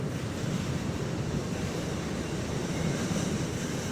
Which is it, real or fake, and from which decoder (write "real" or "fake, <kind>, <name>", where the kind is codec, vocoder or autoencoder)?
fake, vocoder, BigVGAN v2